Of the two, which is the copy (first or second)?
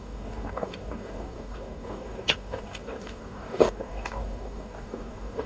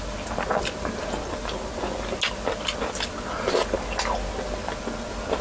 first